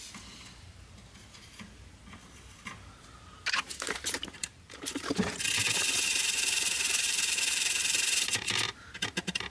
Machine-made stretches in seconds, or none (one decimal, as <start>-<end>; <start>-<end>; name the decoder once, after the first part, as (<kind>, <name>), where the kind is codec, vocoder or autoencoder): 4.4-8.0 (vocoder, BigVGAN v2)